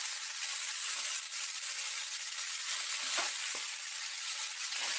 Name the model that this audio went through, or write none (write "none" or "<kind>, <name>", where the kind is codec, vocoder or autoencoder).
vocoder, Vocos